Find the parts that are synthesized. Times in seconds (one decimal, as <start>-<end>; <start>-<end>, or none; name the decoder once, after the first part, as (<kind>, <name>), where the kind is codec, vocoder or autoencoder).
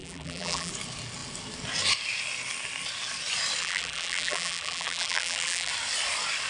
0.0-0.7 (vocoder, BigVGAN v2); 3.6-5.7